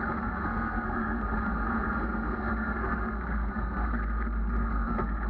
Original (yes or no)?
no